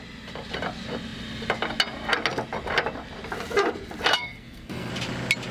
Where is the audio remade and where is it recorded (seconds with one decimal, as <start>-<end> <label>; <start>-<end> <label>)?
0.0-4.1 recorded; 4.1-4.9 remade; 4.9-5.5 recorded